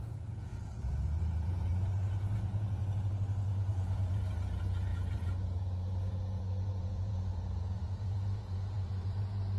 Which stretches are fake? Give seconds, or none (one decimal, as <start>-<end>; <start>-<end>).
0.0-1.7; 2.3-2.8; 3.7-9.6